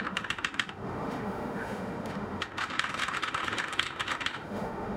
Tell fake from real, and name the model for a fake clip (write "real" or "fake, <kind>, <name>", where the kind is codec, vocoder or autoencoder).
fake, autoencoder, DAC-VAE